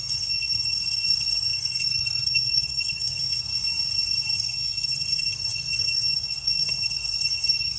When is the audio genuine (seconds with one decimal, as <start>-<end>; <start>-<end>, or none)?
3.5-4.4